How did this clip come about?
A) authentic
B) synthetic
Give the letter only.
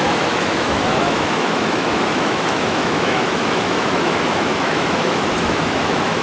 B